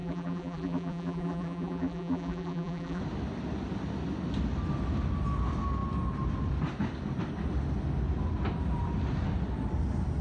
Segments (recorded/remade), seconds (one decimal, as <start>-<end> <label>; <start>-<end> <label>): 0.0-3.0 remade; 3.0-10.2 recorded